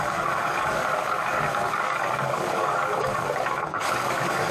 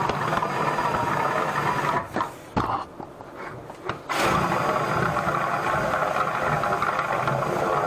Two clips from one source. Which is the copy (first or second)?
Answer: first